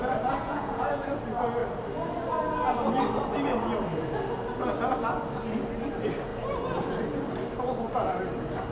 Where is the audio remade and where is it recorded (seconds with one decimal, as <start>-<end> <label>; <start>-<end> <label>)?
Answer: 0.0-0.4 recorded; 0.4-1.2 remade; 1.2-8.7 recorded